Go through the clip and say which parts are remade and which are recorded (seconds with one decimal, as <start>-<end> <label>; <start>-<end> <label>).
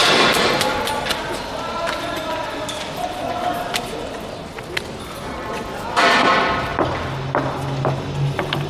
0.0-8.7 recorded